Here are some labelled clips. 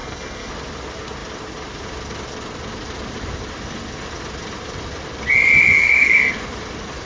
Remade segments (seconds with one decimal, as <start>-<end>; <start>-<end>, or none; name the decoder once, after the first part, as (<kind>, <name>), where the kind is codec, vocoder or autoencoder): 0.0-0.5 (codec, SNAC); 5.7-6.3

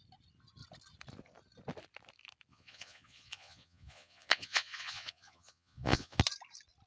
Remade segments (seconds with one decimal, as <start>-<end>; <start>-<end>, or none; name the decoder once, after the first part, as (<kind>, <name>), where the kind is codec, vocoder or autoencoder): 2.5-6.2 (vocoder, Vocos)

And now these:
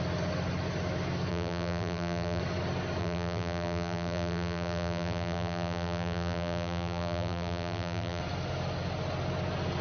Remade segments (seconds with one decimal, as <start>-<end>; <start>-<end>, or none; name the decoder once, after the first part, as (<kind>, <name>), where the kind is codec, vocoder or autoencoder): 1.3-2.4 (vocoder, BigVGAN v2); 3.0-8.2